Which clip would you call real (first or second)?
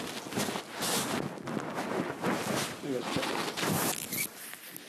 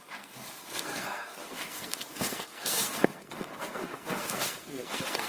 first